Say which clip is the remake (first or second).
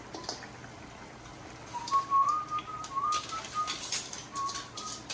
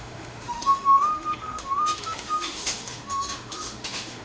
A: second